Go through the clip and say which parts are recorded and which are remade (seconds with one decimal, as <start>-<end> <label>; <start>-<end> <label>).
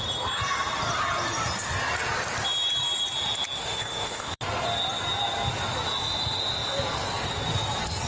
0.0-3.6 recorded; 3.6-4.4 remade; 4.4-8.1 recorded